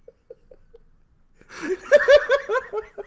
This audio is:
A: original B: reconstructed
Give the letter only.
A